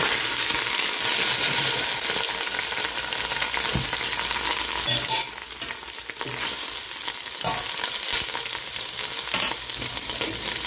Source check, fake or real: real